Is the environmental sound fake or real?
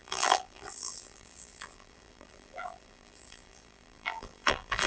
fake